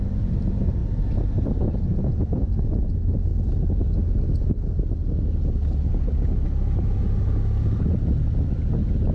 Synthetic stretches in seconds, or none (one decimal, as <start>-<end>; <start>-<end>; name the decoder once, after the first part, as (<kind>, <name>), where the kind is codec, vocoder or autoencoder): 0.0-3.3 (vocoder, BigVGAN v2); 7.8-9.1